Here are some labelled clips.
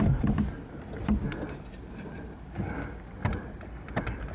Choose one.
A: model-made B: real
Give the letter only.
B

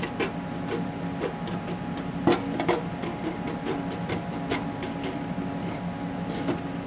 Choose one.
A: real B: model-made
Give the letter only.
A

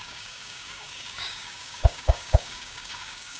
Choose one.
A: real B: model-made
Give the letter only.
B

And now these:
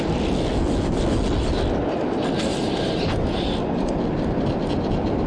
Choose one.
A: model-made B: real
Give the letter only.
B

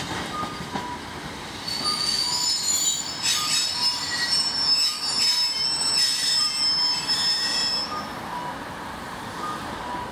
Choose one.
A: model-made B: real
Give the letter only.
B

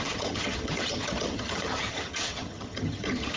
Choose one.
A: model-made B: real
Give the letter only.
A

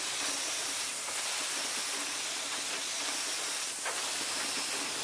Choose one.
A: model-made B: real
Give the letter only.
B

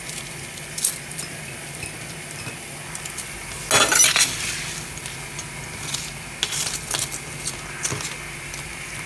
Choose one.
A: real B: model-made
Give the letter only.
A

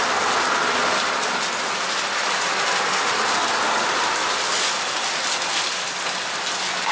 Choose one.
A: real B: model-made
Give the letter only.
A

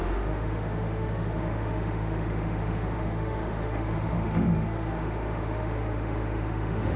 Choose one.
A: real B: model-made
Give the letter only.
B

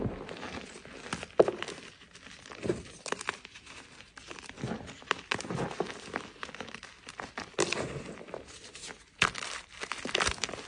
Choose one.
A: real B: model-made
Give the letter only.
A